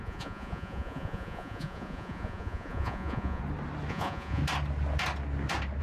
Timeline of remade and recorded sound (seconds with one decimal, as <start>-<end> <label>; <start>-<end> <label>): 0.0-3.4 remade; 3.4-3.9 recorded; 3.9-4.4 remade; 4.4-5.8 recorded